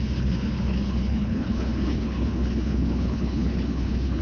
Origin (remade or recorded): remade